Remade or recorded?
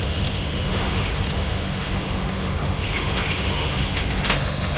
remade